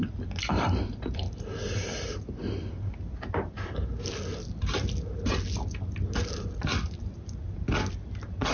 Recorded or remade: recorded